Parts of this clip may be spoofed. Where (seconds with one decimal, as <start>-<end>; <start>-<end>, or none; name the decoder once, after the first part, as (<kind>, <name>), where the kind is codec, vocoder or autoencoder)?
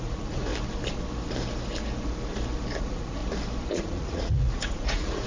0.0-0.5 (vocoder, Vocos); 2.8-3.2; 3.7-5.3